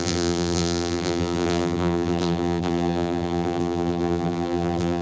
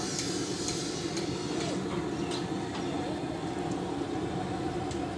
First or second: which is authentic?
second